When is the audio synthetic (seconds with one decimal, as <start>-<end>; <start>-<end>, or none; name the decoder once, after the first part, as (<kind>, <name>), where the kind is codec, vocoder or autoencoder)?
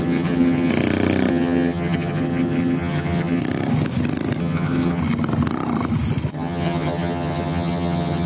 0.0-0.7 (vocoder, HiFi-GAN); 1.3-3.4; 4.4-5.0; 6.3-8.3